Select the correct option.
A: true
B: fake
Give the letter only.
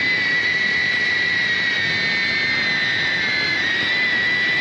A